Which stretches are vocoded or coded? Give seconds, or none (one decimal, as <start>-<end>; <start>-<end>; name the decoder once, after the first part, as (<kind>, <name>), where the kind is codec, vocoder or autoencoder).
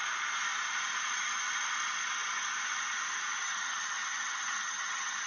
3.4-5.3 (vocoder, HiFi-GAN)